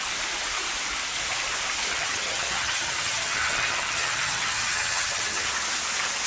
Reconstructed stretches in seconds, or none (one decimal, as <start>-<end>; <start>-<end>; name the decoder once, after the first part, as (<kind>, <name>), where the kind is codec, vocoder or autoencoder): 1.9-5.5 (vocoder, HiFi-GAN)